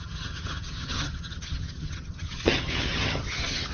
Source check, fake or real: fake